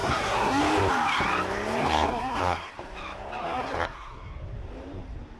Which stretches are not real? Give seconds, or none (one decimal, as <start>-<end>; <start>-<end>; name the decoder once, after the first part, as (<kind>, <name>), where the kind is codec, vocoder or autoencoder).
0.0-0.6 (codec, SNAC); 1.8-2.7; 3.4-4.3